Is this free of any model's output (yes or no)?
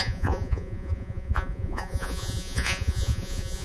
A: no